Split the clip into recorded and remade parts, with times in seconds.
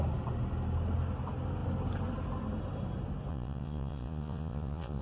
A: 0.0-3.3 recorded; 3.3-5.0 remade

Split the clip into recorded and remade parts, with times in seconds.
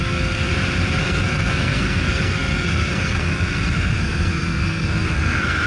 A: 0.0-0.5 remade; 0.5-1.0 recorded; 1.0-5.7 remade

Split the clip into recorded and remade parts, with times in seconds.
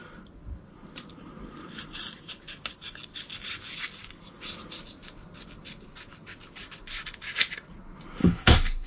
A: 0.0-8.2 recorded; 8.2-8.9 remade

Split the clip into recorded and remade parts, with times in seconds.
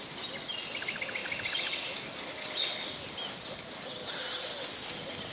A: 0.0-5.3 recorded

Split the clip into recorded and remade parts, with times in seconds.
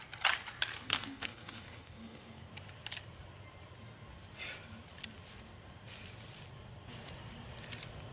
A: 0.0-0.7 recorded; 0.7-2.5 remade; 2.5-8.1 recorded